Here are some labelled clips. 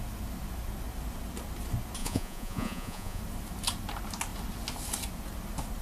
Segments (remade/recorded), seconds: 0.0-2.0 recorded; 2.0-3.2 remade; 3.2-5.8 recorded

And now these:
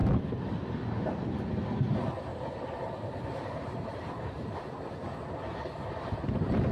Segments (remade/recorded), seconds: 0.0-0.7 remade; 0.7-2.3 recorded; 2.3-4.6 remade; 4.6-6.7 recorded

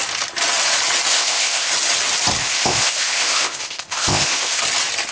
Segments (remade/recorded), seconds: 0.0-1.1 recorded; 1.1-1.7 remade; 1.7-2.4 recorded; 2.4-4.6 remade; 4.6-5.1 recorded

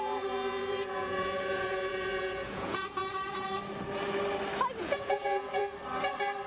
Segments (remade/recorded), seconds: 0.0-3.0 remade; 3.0-4.8 recorded; 4.8-5.6 remade; 5.6-6.5 recorded

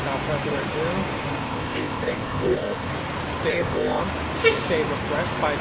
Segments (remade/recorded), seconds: 0.0-1.4 recorded; 1.4-2.9 remade; 2.9-3.5 recorded; 3.5-4.0 remade; 4.0-5.6 recorded

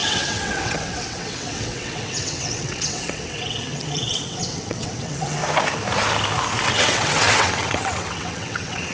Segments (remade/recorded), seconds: 0.0-5.4 remade; 5.4-6.7 recorded; 6.7-8.9 remade

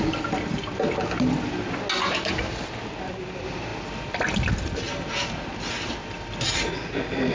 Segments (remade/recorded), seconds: 0.0-7.3 recorded

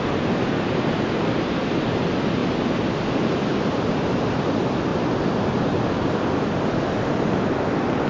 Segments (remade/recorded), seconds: 0.0-8.1 recorded